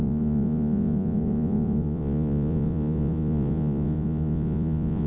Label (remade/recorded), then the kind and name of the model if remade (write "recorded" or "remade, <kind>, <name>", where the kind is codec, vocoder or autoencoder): remade, vocoder, Vocos